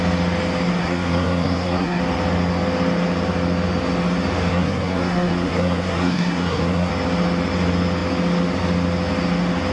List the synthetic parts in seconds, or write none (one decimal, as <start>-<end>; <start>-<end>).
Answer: 0.8-2.0; 4.5-6.9